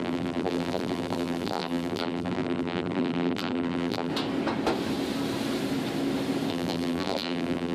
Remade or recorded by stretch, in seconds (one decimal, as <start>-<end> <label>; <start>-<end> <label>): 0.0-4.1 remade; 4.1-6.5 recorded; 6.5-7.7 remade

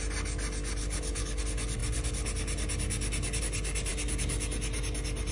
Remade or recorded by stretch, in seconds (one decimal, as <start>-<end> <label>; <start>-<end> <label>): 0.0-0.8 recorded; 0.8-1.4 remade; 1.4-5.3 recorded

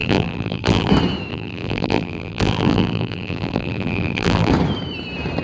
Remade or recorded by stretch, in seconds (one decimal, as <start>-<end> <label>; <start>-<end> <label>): 0.0-0.9 remade; 0.9-1.3 recorded; 1.3-4.5 remade; 4.5-5.4 recorded

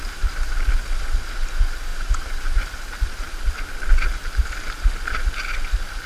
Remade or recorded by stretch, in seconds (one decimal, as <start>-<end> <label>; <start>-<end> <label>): 0.0-6.1 recorded